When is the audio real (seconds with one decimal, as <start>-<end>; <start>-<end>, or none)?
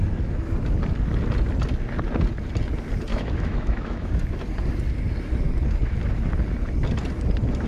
0.0-3.1; 4.1-7.7